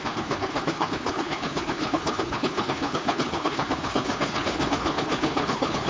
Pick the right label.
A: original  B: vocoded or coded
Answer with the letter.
B